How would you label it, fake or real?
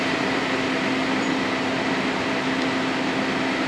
real